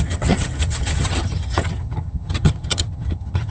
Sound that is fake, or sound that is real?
fake